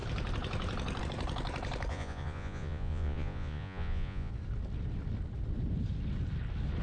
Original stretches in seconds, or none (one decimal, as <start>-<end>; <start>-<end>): 0.0-1.9; 4.3-6.8

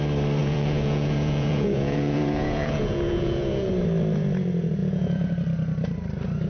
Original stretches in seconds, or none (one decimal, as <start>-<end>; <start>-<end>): 0.0-0.4; 3.7-4.8; 5.3-6.5